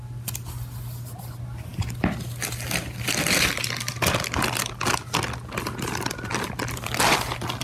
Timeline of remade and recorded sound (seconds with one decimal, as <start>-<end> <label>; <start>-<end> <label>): 0.0-7.6 recorded